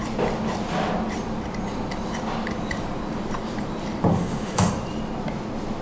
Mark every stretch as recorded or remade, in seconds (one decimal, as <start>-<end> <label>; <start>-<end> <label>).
0.0-4.1 recorded; 4.1-4.7 remade; 4.7-5.8 recorded